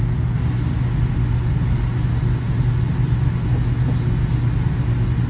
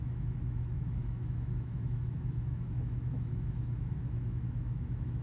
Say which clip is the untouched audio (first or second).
first